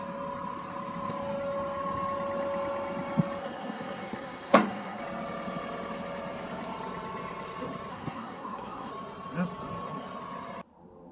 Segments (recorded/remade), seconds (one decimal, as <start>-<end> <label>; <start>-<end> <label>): 0.0-3.4 recorded; 3.4-5.0 remade; 5.0-7.9 recorded; 7.9-8.9 remade; 8.9-11.1 recorded